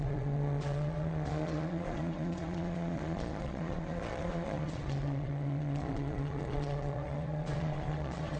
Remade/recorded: remade